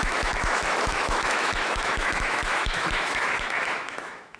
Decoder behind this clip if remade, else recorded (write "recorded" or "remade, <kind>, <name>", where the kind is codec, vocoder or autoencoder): remade, autoencoder, DAC-VAE